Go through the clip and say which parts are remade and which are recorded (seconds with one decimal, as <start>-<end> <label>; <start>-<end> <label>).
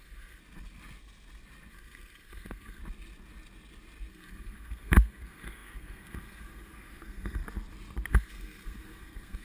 0.0-0.4 remade; 0.4-1.7 recorded; 1.7-2.8 remade; 2.8-4.1 recorded; 4.1-7.4 remade; 7.4-8.1 recorded; 8.1-9.4 remade